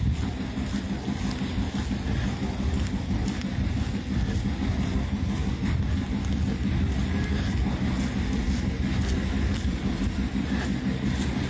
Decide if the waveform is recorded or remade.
recorded